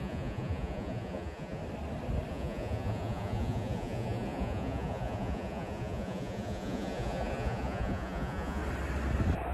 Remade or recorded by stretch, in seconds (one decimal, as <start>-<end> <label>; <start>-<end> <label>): 0.0-1.6 remade; 1.6-2.3 recorded; 2.3-8.6 remade; 8.6-9.5 recorded